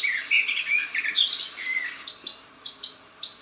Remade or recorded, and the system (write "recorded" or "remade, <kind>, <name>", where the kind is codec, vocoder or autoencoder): recorded